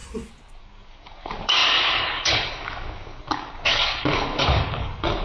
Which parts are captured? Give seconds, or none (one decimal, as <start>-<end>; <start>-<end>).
0.0-0.6